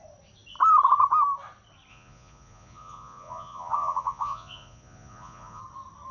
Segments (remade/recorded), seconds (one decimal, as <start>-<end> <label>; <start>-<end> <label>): 0.0-1.9 recorded; 1.9-5.6 remade; 5.6-6.1 recorded